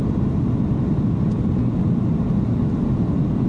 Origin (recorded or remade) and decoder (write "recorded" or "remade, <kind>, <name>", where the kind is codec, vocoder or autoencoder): recorded